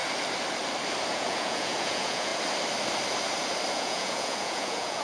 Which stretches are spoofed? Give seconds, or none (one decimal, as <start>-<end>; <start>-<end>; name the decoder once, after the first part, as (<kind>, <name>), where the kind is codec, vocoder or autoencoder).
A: 1.1-2.3 (vocoder, Vocos); 3.7-5.0